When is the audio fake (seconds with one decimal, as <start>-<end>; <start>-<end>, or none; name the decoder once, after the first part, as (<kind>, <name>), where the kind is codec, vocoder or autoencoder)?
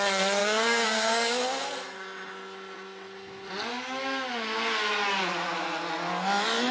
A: 0.4-1.4 (codec, DAC)